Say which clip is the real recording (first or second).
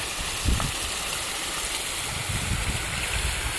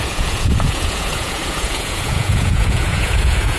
first